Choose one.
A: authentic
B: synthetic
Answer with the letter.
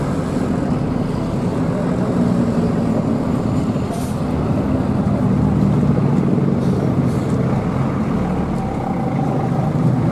A